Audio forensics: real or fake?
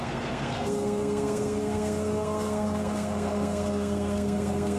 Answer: fake